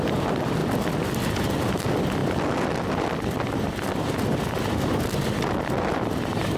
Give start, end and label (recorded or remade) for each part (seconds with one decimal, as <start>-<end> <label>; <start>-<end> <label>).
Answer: 0.0-6.6 recorded